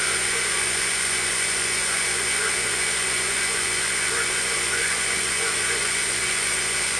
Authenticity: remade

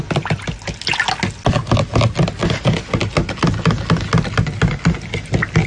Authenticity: recorded